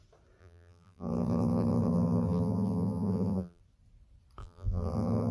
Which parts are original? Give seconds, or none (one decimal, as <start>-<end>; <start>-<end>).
0.0-0.4; 3.6-4.4

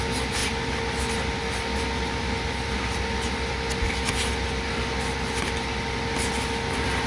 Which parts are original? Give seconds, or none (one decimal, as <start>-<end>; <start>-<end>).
0.0-7.1

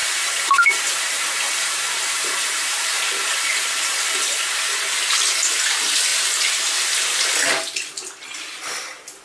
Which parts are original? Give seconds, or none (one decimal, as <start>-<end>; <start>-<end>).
4.5-9.2

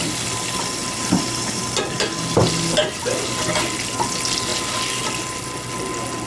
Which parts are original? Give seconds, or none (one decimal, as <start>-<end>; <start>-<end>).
0.0-0.8; 1.6-6.3